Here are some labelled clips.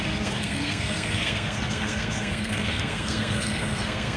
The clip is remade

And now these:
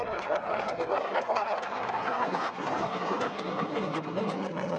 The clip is remade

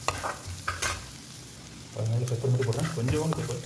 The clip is recorded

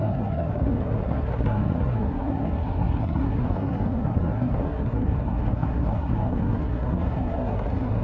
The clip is remade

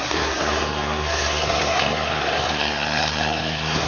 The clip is remade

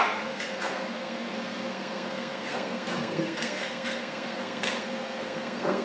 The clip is remade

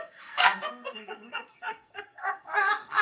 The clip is remade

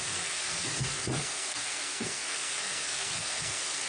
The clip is remade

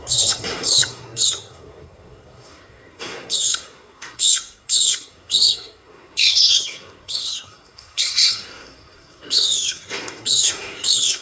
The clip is remade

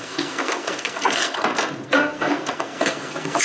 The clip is remade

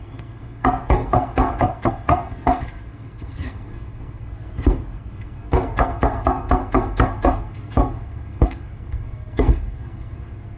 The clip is remade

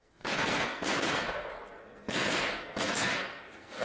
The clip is remade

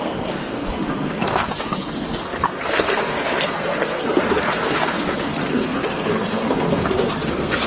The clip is remade